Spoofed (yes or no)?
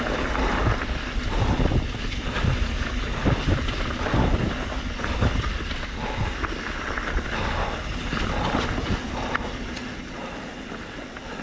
no